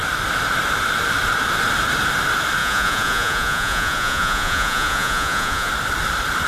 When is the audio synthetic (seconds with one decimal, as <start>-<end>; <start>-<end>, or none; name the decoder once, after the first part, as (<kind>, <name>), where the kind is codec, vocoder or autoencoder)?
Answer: 2.6-5.7 (vocoder, Vocos)